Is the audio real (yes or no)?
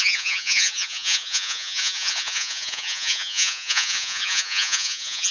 no